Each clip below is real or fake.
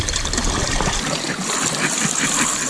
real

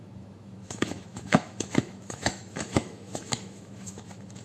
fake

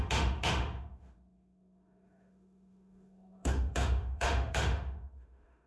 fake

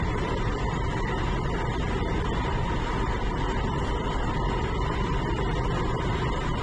fake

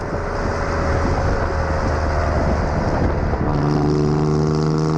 real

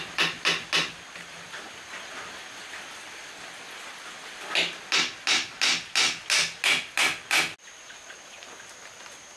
real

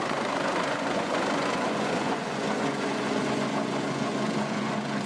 fake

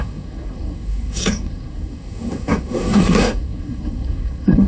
fake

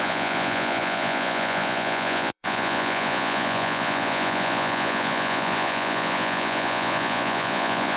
fake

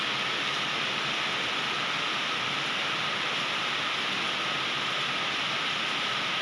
real